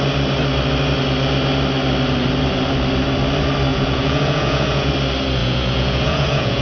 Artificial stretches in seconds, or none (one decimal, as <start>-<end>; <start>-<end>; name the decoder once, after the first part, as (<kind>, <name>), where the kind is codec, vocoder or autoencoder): 3.7-4.9 (vocoder, Vocos); 5.4-6.6